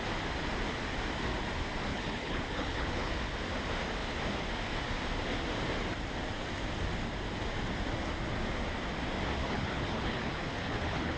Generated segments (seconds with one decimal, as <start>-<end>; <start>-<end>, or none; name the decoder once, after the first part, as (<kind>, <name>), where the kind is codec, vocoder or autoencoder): 1.9-3.1 (codec, HILCodec); 9.4-11.2